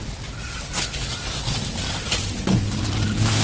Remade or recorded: recorded